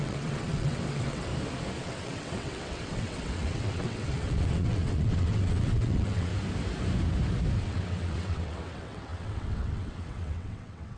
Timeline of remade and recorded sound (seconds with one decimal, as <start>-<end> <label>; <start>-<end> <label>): 0.0-1.3 remade; 1.3-1.8 recorded; 1.8-6.3 remade; 6.3-7.6 recorded; 7.6-11.0 remade